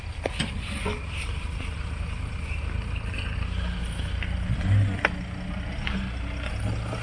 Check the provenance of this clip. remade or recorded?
recorded